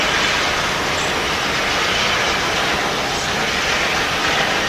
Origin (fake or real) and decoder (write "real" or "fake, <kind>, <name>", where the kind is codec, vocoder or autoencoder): real